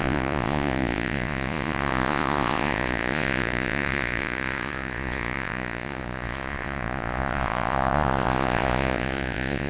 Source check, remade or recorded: remade